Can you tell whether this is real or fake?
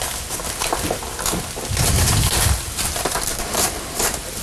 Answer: fake